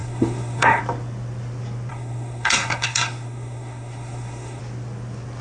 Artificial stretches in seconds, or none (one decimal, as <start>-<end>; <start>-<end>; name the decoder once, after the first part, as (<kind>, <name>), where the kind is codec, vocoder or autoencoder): 0.0-0.8 (codec, SNAC); 1.9-4.6